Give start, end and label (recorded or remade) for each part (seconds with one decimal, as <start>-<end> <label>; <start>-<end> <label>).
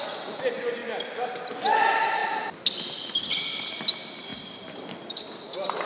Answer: 0.0-0.8 recorded; 0.8-1.5 remade; 1.5-4.3 recorded; 4.3-5.9 remade